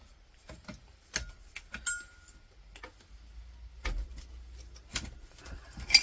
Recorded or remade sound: recorded